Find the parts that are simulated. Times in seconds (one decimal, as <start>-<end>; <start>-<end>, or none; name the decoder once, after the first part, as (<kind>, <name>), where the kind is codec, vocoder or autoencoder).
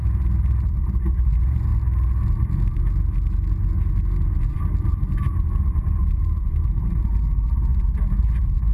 0.0-1.7 (vocoder, BigVGAN v2); 4.4-8.7